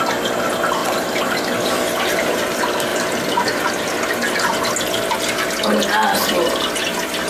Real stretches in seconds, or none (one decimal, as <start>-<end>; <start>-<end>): 0.0-0.8; 1.5-2.9; 3.4-7.3